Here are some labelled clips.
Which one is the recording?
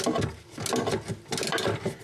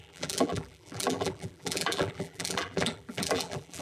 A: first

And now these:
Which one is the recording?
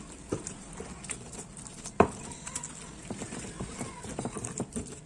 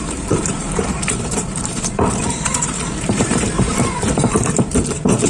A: first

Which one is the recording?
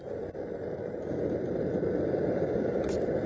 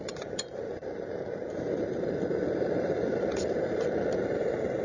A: first